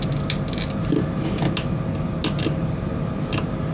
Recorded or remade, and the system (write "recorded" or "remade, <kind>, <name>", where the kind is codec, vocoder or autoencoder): recorded